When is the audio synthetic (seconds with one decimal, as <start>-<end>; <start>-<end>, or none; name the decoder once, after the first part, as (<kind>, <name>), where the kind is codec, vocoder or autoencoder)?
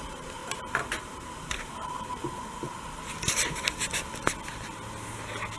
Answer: 0.0-0.4 (vocoder, BigVGAN v2); 1.0-2.2